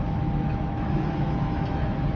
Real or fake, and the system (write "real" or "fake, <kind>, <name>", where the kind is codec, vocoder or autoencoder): fake, autoencoder, DAC-VAE